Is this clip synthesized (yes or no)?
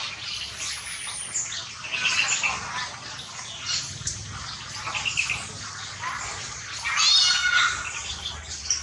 no